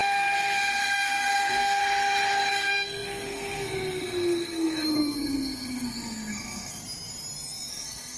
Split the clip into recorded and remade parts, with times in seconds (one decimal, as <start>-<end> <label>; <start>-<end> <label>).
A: 0.0-1.8 remade; 1.8-2.5 recorded; 2.5-6.8 remade; 6.8-7.7 recorded; 7.7-8.2 remade

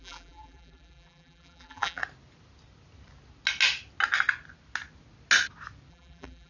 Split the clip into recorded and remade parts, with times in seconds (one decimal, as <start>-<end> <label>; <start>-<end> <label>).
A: 0.0-2.0 remade; 2.0-5.9 recorded; 5.9-6.5 remade

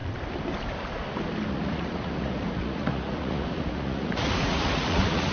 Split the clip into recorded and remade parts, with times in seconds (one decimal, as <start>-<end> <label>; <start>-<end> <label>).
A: 0.0-1.5 recorded; 1.5-5.3 remade

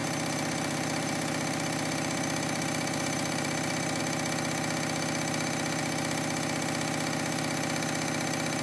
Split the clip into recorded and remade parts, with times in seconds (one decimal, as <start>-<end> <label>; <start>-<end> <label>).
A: 0.0-4.0 remade; 4.0-8.6 recorded

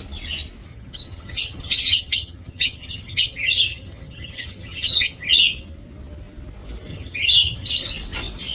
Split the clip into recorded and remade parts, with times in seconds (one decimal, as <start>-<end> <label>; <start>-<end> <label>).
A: 0.0-0.7 recorded; 0.7-5.3 remade; 5.3-6.9 recorded; 6.9-7.9 remade; 7.9-8.5 recorded